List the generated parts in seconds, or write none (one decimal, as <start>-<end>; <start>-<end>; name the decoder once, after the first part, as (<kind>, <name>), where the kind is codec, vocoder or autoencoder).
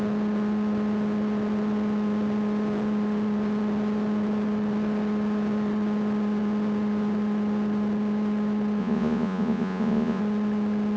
8.8-10.2 (vocoder, Vocos)